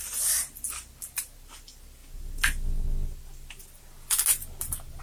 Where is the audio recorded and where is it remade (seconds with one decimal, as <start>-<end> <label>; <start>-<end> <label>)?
0.0-5.0 recorded